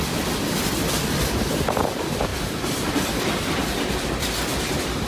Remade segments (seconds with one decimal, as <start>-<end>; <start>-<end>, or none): 0.0-5.1